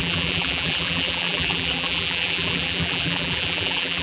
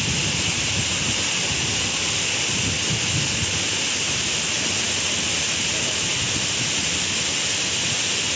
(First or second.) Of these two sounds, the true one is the second